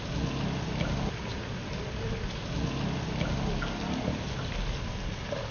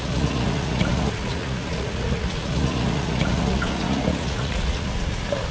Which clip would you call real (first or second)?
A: first